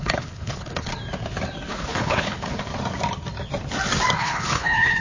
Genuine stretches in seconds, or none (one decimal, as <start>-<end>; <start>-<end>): 0.9-1.7; 2.7-4.2